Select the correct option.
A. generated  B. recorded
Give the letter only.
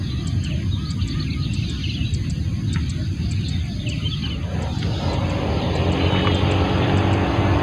B